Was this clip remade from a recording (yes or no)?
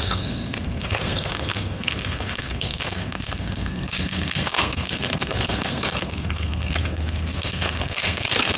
yes